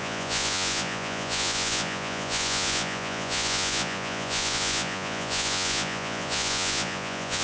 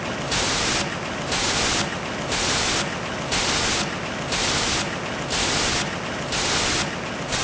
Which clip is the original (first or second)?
second